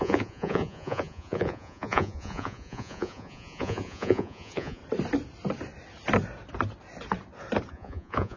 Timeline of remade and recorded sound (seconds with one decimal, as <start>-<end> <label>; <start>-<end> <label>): 0.0-4.8 remade; 4.8-7.7 recorded; 7.7-8.4 remade